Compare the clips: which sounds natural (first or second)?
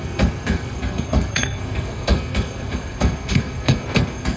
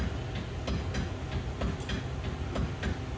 second